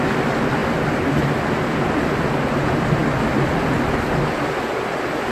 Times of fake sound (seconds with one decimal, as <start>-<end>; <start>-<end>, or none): none